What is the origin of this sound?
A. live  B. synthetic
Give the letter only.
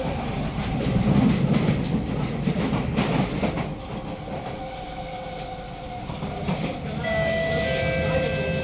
A